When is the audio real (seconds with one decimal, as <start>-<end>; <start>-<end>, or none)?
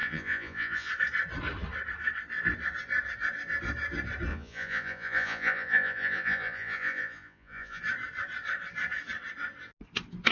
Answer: 0.9-4.3; 7.8-10.3